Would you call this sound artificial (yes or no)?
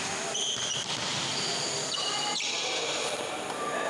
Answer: yes